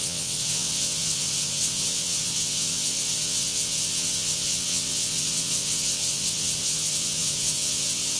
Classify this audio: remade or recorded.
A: remade